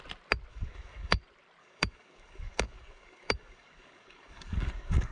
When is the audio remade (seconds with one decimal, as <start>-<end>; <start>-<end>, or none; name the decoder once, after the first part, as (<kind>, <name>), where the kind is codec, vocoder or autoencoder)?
0.5-1.2 (codec, DAC); 1.6-5.1